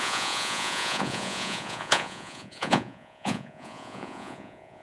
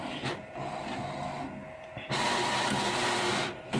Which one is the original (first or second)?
second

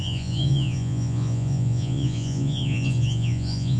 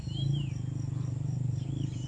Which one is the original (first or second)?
second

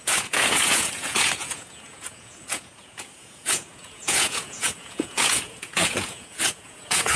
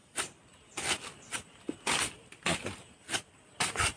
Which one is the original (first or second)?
second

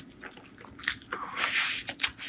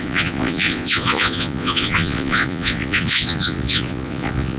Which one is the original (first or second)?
first